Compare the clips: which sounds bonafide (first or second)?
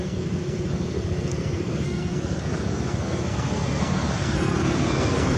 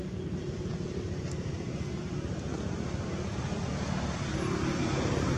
second